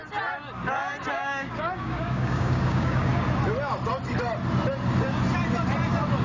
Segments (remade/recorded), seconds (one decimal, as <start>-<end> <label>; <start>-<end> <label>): 0.0-1.1 recorded; 1.1-3.1 remade; 3.1-6.2 recorded